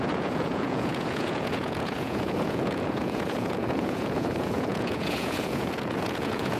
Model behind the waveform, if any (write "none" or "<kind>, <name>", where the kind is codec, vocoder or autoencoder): vocoder, Vocos